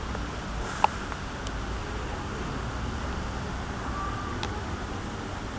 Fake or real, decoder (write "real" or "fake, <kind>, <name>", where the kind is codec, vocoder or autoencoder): real